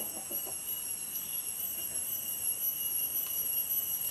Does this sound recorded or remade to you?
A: recorded